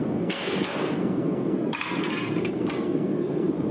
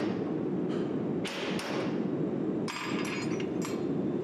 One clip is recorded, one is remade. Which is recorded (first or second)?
second